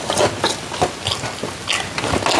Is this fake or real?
real